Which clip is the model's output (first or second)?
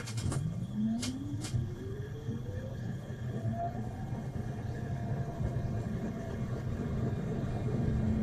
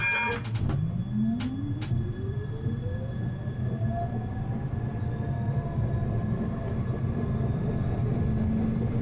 first